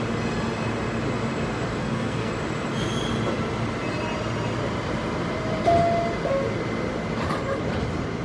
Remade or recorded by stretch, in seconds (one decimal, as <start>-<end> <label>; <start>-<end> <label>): 0.0-1.8 recorded; 1.8-2.3 remade; 2.3-8.2 recorded

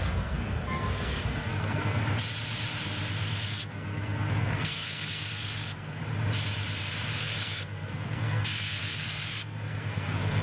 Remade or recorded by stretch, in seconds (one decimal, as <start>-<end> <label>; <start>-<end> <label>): 0.0-2.0 remade; 2.0-3.5 recorded; 3.5-6.0 remade; 6.0-7.2 recorded; 7.2-10.4 remade